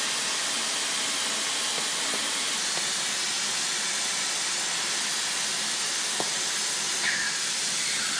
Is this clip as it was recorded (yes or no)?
yes